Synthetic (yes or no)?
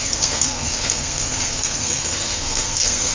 yes